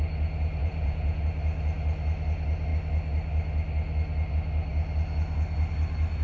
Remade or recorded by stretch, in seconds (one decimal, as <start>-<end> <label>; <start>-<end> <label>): 0.0-0.6 recorded; 0.6-1.2 remade; 1.2-6.2 recorded